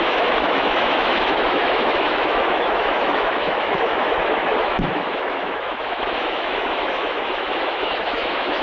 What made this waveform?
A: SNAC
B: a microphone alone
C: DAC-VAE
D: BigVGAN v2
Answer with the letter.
C